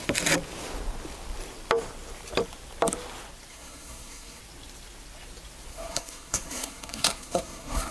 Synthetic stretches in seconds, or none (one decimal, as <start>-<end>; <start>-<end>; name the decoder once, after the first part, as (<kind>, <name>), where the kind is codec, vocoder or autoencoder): 3.5-4.4 (codec, SNAC); 5.7-7.9